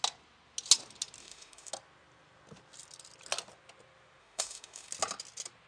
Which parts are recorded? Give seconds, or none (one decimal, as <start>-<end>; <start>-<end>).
0.0-1.2; 1.7-4.2; 4.9-5.7